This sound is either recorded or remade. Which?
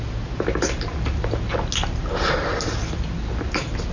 recorded